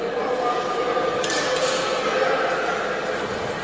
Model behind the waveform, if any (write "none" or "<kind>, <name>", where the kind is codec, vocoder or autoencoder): none